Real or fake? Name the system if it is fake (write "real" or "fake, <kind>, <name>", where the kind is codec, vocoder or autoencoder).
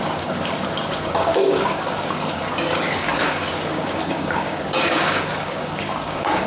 fake, codec, DAC